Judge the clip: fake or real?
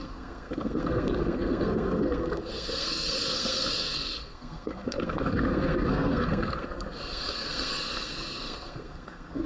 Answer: fake